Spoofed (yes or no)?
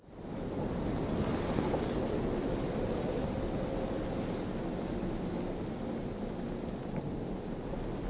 no